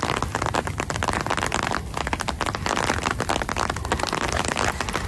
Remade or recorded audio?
recorded